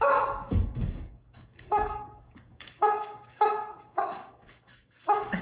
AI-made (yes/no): yes